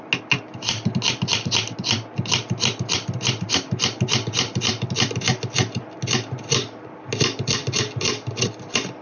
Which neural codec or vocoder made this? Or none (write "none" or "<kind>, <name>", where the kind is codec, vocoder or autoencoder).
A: none